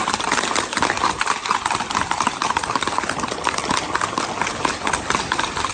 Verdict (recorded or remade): recorded